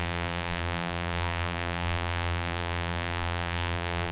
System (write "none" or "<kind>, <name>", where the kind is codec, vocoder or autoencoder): vocoder, BigVGAN v2